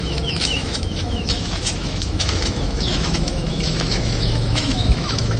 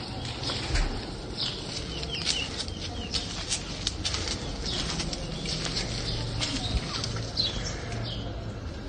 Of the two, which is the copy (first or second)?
first